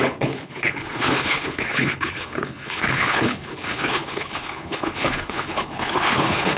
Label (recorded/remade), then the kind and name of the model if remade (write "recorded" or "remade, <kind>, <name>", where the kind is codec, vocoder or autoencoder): remade, codec, HILCodec